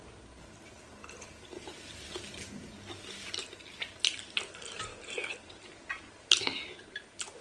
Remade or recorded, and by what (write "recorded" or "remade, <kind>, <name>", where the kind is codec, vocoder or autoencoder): recorded